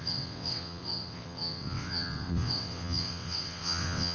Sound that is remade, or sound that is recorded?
remade